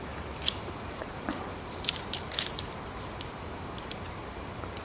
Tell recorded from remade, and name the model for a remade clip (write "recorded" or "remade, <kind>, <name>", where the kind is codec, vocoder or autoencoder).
remade, vocoder, BigVGAN v2